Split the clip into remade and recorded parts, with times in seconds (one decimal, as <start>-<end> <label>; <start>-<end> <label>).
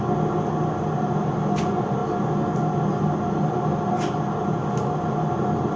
0.0-5.8 recorded